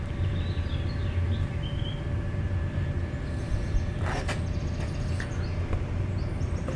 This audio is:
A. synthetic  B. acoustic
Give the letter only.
B